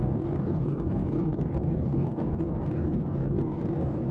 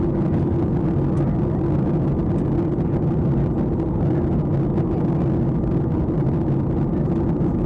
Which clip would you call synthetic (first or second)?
first